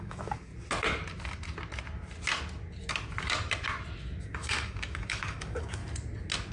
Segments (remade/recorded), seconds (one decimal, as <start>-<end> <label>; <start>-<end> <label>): 0.0-0.5 remade; 0.5-4.2 recorded; 4.2-5.8 remade; 5.8-6.5 recorded